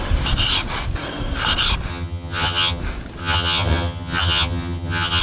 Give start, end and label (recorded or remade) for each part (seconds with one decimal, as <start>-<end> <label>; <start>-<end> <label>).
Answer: 0.0-1.9 recorded; 1.9-2.8 remade; 2.8-3.2 recorded; 3.2-5.2 remade